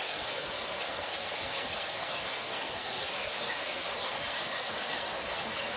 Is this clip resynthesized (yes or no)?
yes